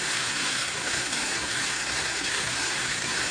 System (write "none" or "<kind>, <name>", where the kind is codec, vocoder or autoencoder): codec, SNAC